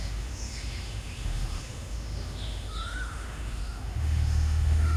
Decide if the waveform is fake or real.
fake